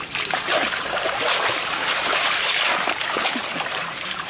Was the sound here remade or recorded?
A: remade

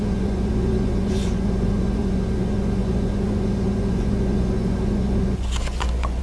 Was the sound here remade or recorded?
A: remade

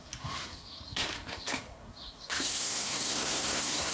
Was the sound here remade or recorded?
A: remade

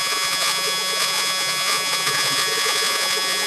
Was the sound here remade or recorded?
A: remade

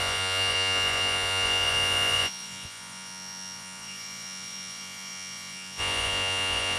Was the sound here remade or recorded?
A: remade